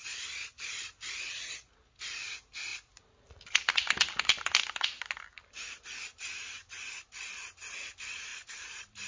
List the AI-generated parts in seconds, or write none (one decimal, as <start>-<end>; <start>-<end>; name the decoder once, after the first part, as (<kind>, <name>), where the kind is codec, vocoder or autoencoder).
8.3-9.1 (vocoder, BigVGAN v2)